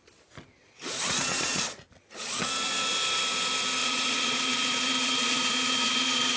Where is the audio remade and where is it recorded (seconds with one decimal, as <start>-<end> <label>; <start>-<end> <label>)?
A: 0.0-0.6 recorded; 0.6-2.4 remade; 2.4-3.8 recorded; 3.8-6.4 remade